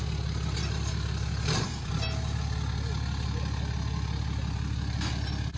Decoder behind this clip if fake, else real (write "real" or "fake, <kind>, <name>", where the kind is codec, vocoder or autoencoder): real